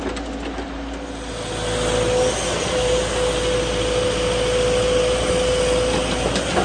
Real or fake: real